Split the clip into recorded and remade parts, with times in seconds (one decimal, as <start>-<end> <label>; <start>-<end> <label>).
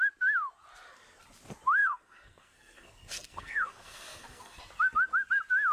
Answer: 0.0-1.8 recorded; 1.8-4.6 remade; 4.6-5.7 recorded